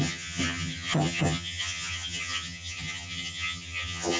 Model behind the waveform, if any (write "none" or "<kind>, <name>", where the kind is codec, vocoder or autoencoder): vocoder, HiFi-GAN